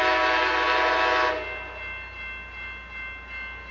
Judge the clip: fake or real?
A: real